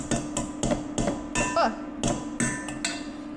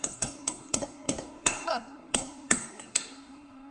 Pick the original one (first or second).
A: first